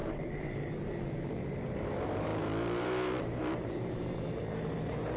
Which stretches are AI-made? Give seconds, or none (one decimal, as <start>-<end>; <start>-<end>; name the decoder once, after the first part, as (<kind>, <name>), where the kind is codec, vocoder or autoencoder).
0.0-5.2 (vocoder, BigVGAN v2)